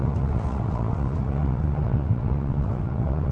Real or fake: fake